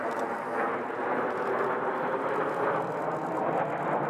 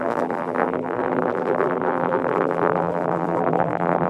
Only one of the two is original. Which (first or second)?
first